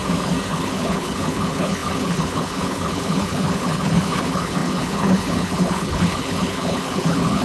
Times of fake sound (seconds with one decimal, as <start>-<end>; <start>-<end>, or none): 0.5-7.4